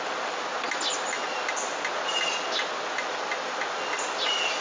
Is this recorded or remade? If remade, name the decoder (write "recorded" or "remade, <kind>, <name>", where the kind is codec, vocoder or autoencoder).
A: recorded